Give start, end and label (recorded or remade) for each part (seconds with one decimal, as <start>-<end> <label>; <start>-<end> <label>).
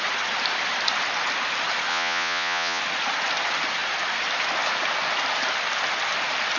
0.0-1.9 recorded; 1.9-2.8 remade; 2.8-6.6 recorded